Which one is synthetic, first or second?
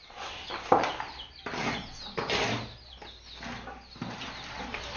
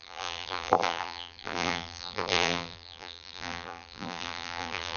second